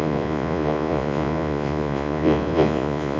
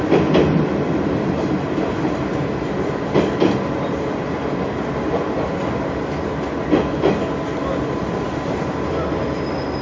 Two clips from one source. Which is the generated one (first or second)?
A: first